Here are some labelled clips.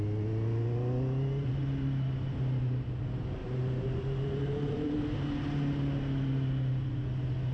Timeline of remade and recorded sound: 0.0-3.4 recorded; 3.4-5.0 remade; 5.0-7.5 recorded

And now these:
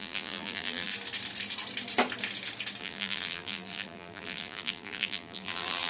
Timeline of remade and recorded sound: 0.0-0.9 remade; 0.9-2.8 recorded; 2.8-5.9 remade

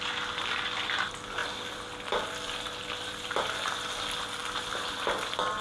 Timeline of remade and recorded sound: 0.0-1.4 recorded; 1.4-3.4 remade; 3.4-4.4 recorded; 4.4-5.6 remade

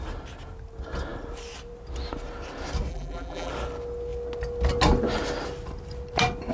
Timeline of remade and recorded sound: 0.0-2.9 recorded; 2.9-3.5 remade; 3.5-6.5 recorded

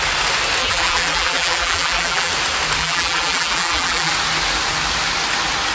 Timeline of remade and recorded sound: 0.0-0.6 recorded; 0.6-2.3 remade; 2.3-2.8 recorded; 2.8-4.1 remade; 4.1-5.7 recorded

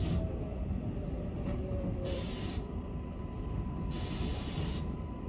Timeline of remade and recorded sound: 0.0-0.5 recorded; 0.5-3.5 remade; 3.5-4.3 recorded; 4.3-5.3 remade

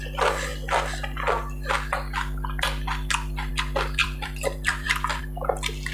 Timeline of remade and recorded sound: 0.0-4.0 recorded; 4.0-5.2 remade; 5.2-5.9 recorded

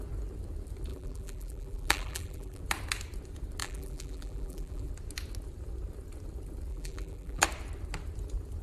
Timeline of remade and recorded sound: 0.0-0.9 recorded; 0.9-2.6 remade; 2.6-3.6 recorded; 3.6-4.9 remade; 4.9-6.7 recorded; 6.7-7.4 remade; 7.4-8.6 recorded